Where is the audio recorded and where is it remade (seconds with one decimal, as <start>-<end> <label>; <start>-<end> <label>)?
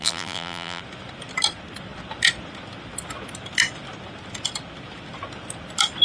0.0-0.8 remade; 0.8-6.0 recorded